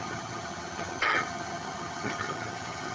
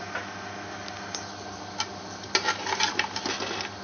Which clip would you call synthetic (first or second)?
first